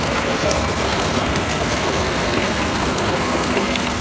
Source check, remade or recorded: remade